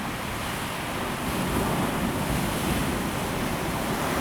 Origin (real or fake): real